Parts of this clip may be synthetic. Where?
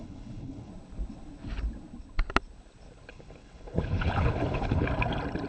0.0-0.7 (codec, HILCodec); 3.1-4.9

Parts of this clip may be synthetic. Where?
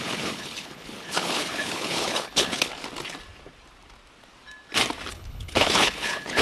0.0-2.7 (codec, HILCodec); 5.1-6.4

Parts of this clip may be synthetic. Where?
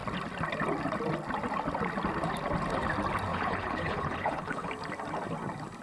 3.3-4.7 (codec, HILCodec)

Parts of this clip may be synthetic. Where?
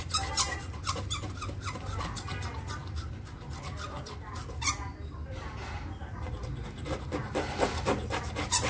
none